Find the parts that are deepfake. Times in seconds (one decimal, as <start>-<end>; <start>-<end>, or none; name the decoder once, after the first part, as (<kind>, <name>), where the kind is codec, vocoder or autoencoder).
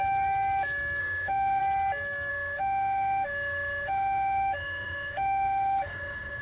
1.0-1.6 (autoencoder, DAC-VAE); 2.3-6.4